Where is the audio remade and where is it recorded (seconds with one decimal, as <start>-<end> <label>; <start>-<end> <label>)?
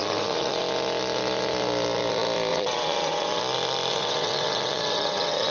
0.0-0.6 remade; 0.6-2.5 recorded; 2.5-3.4 remade; 3.4-3.9 recorded; 3.9-5.5 remade